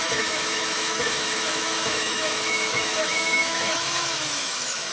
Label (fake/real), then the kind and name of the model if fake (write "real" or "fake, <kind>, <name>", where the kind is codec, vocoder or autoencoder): fake, autoencoder, DAC-VAE